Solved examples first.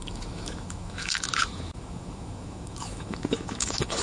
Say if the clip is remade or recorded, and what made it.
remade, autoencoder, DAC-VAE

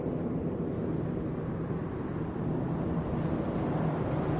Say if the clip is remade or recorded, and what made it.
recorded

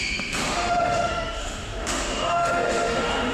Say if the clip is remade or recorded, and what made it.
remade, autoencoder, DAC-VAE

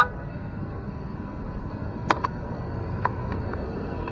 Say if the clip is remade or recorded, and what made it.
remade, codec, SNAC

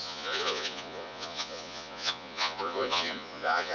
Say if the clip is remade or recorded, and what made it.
remade, vocoder, Vocos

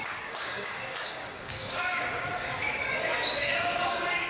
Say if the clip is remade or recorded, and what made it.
remade, codec, DAC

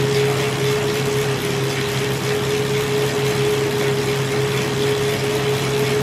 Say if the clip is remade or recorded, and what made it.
recorded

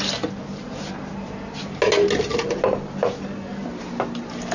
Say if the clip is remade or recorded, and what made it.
recorded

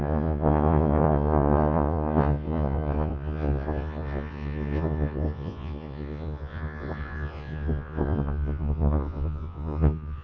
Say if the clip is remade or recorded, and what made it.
remade, vocoder, Vocos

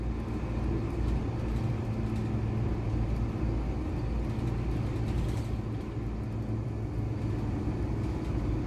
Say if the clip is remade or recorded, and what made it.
recorded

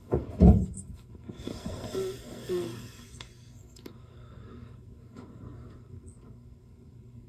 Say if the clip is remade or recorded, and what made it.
remade, codec, SNAC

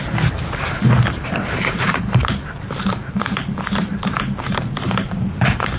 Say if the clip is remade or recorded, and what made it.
remade, vocoder, BigVGAN v2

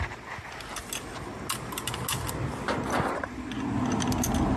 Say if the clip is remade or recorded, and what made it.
recorded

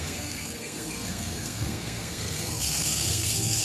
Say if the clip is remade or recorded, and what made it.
remade, codec, SNAC